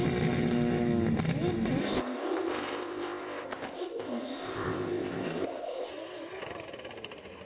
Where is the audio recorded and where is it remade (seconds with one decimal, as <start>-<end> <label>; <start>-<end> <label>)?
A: 0.0-1.8 recorded; 1.8-5.9 remade; 5.9-7.5 recorded

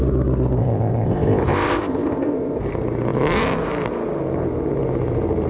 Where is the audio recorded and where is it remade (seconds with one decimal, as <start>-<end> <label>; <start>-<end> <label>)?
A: 0.0-0.6 recorded; 0.6-2.6 remade; 2.6-5.5 recorded